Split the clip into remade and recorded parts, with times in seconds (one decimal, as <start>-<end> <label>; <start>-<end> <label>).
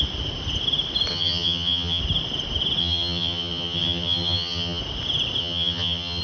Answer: 0.0-1.1 recorded; 1.1-2.0 remade; 2.0-2.8 recorded; 2.8-4.8 remade; 4.8-5.4 recorded; 5.4-6.2 remade